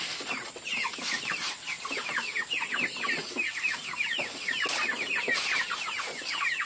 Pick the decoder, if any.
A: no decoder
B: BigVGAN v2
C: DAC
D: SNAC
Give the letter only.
A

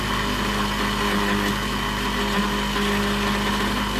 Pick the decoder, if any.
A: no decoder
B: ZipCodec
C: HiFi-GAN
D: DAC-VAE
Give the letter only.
A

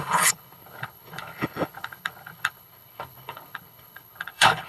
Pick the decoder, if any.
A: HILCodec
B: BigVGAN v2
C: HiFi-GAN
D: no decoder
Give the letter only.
A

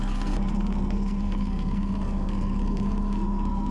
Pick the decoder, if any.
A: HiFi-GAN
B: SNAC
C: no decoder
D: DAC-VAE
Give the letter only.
B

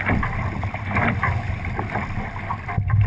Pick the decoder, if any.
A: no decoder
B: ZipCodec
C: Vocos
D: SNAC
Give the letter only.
A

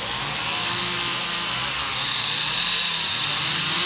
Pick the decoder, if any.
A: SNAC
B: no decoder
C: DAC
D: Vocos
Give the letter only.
B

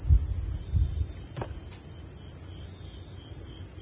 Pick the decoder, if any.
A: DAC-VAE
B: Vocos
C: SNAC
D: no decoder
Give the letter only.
D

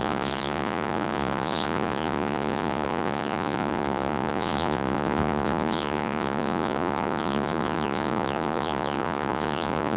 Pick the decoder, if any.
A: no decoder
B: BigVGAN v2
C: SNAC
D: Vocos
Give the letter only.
D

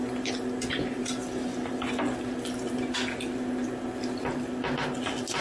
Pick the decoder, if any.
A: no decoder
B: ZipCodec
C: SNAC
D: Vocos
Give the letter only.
A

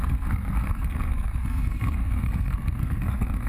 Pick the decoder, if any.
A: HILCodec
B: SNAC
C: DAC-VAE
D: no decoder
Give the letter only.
B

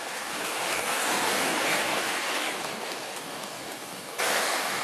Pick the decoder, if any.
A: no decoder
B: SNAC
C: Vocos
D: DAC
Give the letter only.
D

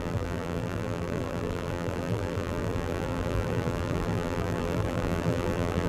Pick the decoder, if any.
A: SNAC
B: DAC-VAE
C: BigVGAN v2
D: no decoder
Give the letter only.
C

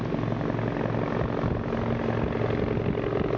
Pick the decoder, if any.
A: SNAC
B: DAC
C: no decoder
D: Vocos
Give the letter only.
C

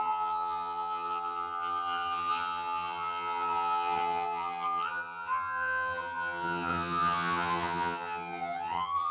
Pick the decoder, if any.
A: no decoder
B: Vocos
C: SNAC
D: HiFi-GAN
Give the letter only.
D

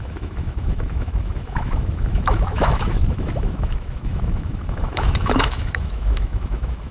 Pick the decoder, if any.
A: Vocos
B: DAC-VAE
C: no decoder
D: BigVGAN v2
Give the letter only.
B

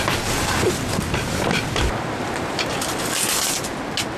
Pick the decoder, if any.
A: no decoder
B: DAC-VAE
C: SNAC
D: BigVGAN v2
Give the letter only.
A